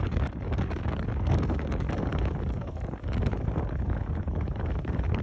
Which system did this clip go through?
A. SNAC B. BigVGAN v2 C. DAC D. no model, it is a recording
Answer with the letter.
C